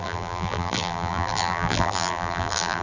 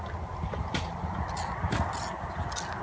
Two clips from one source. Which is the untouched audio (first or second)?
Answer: second